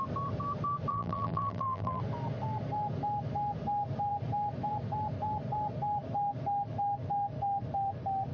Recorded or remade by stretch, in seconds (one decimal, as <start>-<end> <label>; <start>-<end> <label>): 0.0-0.9 recorded; 0.9-2.0 remade; 2.0-8.3 recorded